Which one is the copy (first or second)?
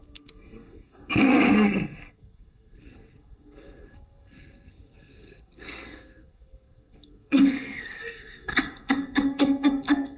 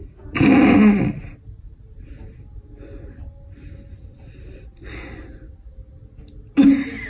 first